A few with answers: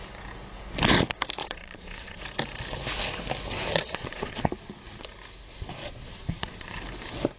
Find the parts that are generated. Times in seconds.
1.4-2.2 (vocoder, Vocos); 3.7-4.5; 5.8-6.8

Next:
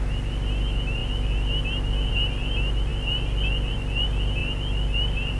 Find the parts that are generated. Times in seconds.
none

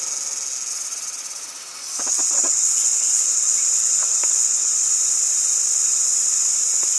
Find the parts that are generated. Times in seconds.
0.7-4.9 (vocoder, WaveNeXt)

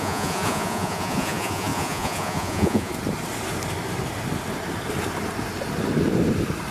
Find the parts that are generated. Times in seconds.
0.0-2.9 (vocoder, Vocos)

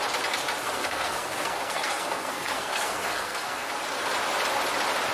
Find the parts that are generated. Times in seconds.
0.6-3.7 (codec, SNAC)

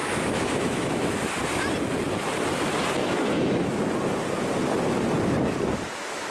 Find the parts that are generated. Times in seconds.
0.0-1.2 (autoencoder, DAC-VAE); 3.0-3.8

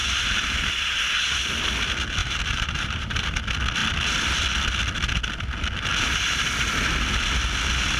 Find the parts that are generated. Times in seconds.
0.0-0.7 (vocoder, BigVGAN v2); 2.2-3.4

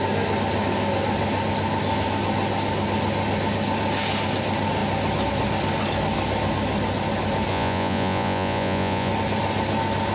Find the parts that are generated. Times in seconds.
7.5-9.1 (vocoder, Vocos)